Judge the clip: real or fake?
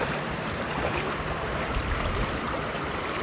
fake